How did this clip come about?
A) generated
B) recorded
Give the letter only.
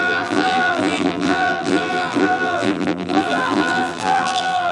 A